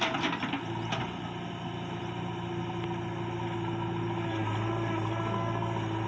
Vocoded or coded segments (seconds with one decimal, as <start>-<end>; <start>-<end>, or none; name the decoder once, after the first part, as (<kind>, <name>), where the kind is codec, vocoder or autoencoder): none